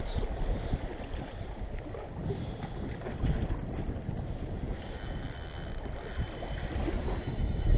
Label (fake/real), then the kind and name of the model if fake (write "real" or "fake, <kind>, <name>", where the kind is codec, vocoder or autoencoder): real